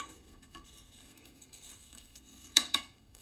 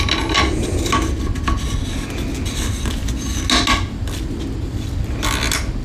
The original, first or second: second